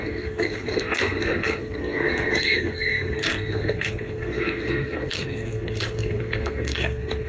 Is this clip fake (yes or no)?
yes